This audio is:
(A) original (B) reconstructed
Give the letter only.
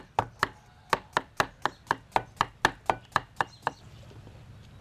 A